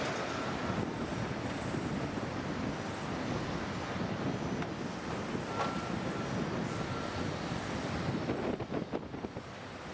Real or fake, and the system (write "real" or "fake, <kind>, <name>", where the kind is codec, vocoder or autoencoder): real